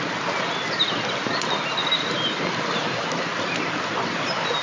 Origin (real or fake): real